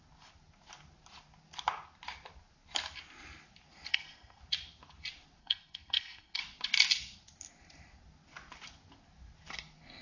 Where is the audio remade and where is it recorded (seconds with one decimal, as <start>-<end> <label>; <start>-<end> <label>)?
0.0-3.9 recorded; 3.9-4.4 remade; 4.4-5.4 recorded; 5.4-6.4 remade; 6.4-10.0 recorded